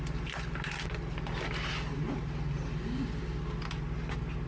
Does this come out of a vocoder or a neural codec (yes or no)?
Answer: no